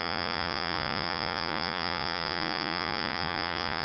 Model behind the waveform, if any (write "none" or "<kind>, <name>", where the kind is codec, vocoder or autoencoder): vocoder, Vocos